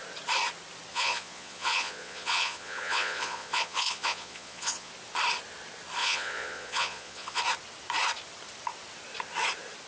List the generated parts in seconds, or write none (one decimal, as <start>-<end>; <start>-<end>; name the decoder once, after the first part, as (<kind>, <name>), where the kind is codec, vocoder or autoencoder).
0.9-4.9 (vocoder, Vocos); 6.0-7.4